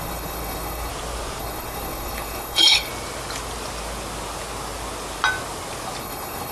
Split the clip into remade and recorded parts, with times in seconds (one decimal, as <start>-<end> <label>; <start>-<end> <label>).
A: 0.0-0.9 remade; 0.9-1.4 recorded; 1.4-2.9 remade; 2.9-6.0 recorded; 6.0-6.5 remade